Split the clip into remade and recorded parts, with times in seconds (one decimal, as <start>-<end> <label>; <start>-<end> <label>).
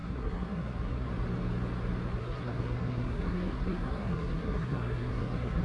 0.0-1.1 remade; 1.1-2.2 recorded; 2.2-5.6 remade